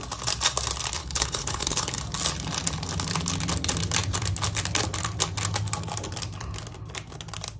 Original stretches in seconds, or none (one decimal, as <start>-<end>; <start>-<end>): 0.0-1.0; 2.0-7.6